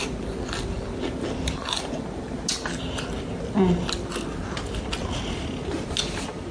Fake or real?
real